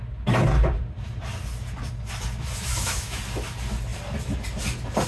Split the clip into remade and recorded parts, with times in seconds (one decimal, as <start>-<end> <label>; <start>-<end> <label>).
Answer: 0.0-2.7 recorded; 2.7-3.2 remade; 3.2-5.1 recorded